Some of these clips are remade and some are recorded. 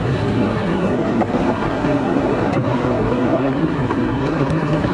remade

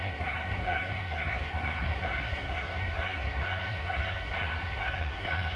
remade